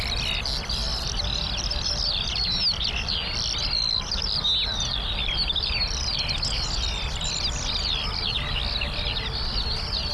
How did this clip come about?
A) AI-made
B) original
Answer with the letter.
B